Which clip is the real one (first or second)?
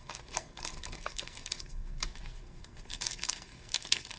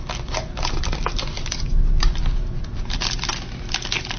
second